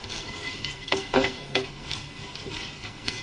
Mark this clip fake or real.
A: fake